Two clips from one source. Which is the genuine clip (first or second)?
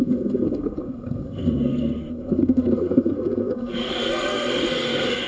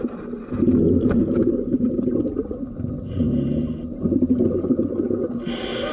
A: second